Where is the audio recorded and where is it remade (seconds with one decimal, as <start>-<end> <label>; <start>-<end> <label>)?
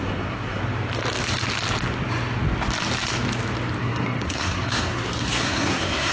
0.0-0.6 remade; 0.6-3.8 recorded; 3.8-6.1 remade